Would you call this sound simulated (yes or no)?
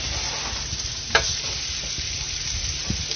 no